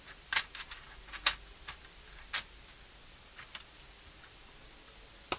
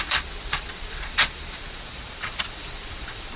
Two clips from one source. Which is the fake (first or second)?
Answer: second